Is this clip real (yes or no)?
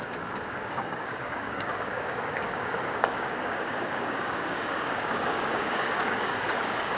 no